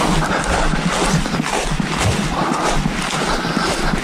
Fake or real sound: real